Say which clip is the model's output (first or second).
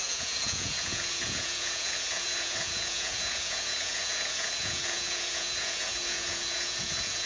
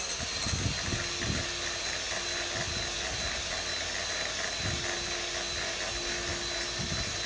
first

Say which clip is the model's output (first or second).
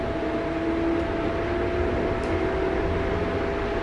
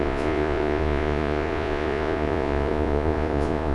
second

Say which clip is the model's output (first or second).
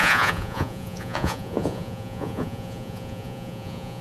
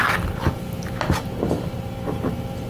first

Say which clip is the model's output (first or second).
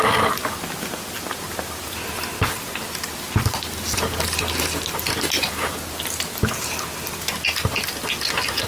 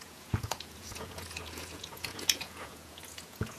second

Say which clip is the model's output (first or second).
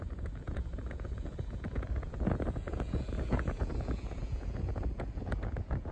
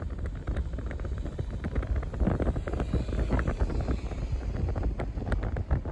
first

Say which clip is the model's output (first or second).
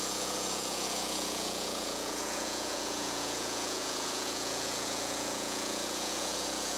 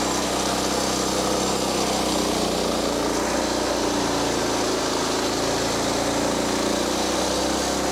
first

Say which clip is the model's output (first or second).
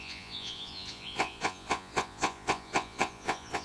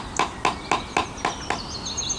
first